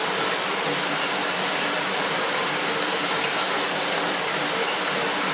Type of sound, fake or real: real